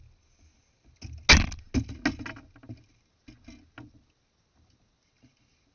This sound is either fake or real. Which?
real